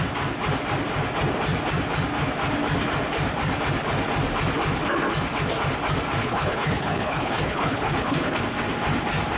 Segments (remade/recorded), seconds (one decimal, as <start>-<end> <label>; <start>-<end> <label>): 0.0-6.2 recorded; 6.2-8.4 remade; 8.4-9.4 recorded